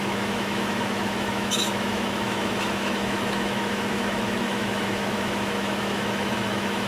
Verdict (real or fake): fake